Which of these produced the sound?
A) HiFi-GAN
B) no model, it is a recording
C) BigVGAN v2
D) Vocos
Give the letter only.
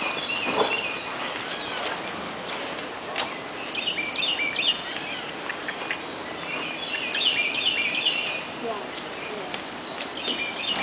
B